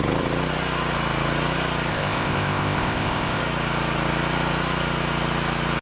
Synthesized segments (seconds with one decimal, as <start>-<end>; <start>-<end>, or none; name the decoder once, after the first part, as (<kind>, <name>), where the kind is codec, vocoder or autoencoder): 1.9-3.4 (codec, ZipCodec)